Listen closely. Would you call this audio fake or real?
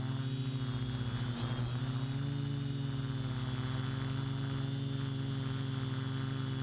real